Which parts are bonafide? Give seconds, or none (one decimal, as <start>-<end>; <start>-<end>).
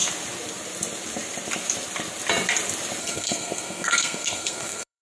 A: 0.0-3.0